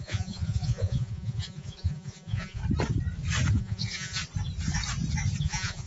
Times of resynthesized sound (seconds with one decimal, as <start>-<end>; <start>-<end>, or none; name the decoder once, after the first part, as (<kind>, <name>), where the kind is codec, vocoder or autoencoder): 0.0-2.6 (vocoder, Vocos); 3.5-4.2; 5.4-5.9